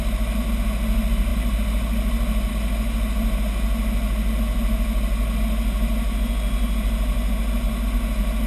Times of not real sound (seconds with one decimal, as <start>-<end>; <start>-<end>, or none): none